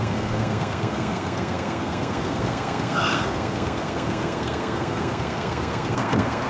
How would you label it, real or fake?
fake